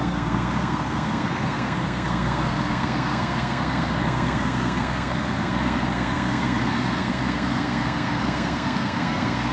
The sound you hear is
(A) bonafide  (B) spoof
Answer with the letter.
B